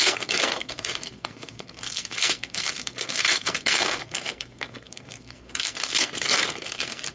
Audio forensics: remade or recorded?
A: remade